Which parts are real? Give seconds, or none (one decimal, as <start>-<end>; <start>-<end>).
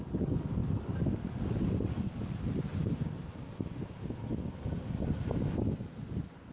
2.7-6.1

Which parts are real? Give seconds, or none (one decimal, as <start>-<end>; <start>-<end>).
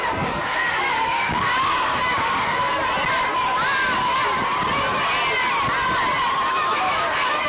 2.6-6.5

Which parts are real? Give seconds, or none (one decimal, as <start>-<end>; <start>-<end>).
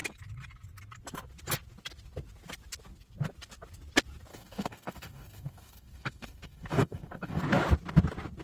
0.0-4.3; 7.4-8.4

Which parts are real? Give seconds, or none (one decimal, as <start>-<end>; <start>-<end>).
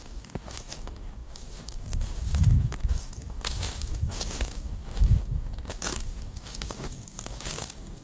none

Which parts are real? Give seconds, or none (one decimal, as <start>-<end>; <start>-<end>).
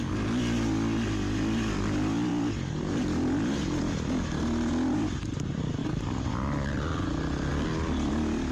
0.0-5.8; 6.3-8.5